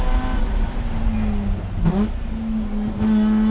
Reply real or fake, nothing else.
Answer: real